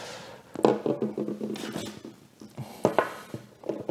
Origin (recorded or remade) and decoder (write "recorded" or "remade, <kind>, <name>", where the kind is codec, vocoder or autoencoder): recorded